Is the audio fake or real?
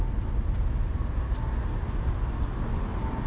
real